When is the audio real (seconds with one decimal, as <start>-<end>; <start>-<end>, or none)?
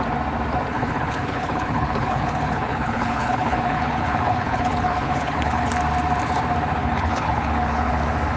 0.0-0.7; 5.7-6.8; 7.9-8.4